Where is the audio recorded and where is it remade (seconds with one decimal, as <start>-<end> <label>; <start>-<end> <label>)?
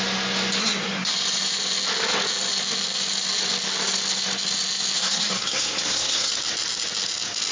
0.0-0.6 recorded; 0.6-1.1 remade; 1.1-5.0 recorded; 5.0-6.3 remade; 6.3-7.5 recorded